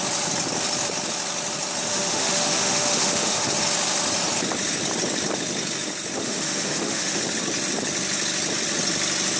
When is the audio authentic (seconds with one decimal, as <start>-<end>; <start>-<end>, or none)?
0.0-1.9; 3.5-6.2; 7.2-9.4